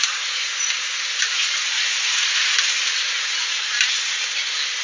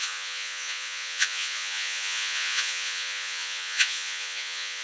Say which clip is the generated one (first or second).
second